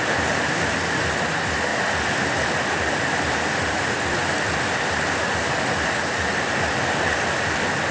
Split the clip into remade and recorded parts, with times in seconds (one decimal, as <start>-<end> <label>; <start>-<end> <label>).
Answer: 0.0-7.9 recorded